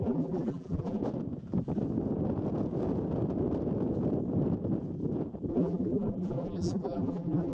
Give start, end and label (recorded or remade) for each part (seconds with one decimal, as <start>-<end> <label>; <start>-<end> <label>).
0.0-1.0 remade; 1.0-5.5 recorded; 5.5-7.5 remade